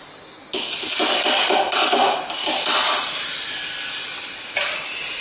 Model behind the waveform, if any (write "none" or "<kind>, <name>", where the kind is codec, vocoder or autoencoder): none